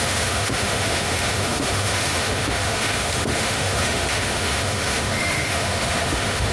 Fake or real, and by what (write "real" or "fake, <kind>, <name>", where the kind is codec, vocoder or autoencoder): fake, autoencoder, DAC-VAE